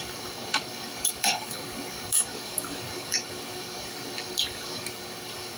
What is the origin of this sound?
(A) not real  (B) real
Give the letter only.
A